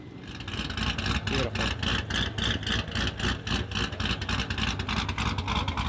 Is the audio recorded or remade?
recorded